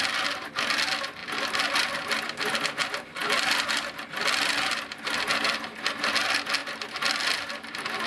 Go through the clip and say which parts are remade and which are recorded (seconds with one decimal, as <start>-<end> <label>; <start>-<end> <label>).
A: 0.0-8.1 recorded